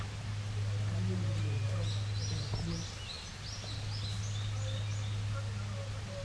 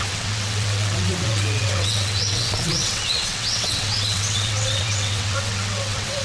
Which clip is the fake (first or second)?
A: second